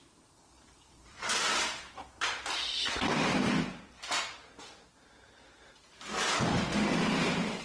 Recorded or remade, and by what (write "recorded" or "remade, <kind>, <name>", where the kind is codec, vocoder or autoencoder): remade, vocoder, BigVGAN v2